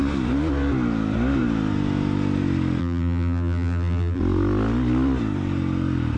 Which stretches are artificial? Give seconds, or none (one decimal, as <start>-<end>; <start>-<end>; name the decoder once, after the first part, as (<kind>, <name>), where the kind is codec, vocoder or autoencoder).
2.8-4.2 (vocoder, BigVGAN v2)